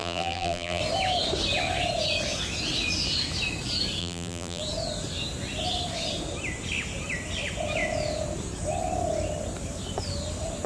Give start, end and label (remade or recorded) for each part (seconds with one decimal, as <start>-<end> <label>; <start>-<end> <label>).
0.0-0.8 remade; 0.8-4.0 recorded; 4.0-4.6 remade; 4.6-10.7 recorded

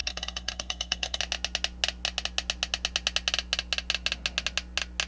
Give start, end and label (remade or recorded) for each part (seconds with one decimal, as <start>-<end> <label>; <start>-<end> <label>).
0.0-1.2 remade; 1.2-5.1 recorded

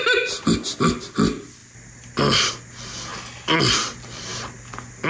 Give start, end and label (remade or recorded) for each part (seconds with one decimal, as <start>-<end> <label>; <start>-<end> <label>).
0.0-5.1 recorded